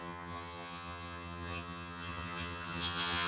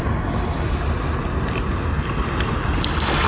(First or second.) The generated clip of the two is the first